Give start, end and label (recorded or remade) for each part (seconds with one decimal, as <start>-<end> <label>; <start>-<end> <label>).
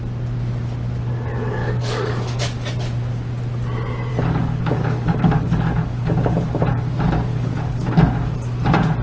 0.0-1.6 recorded; 1.6-2.4 remade; 2.4-4.1 recorded; 4.1-6.6 remade; 6.6-7.3 recorded; 7.3-7.9 remade; 7.9-9.0 recorded